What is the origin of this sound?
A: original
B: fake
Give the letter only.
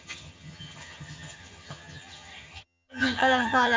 B